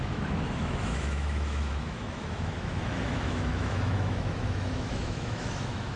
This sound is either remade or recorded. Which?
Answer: remade